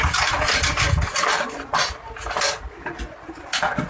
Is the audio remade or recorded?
recorded